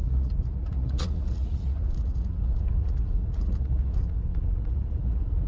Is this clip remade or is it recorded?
remade